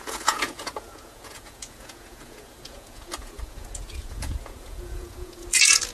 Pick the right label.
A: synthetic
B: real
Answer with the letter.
A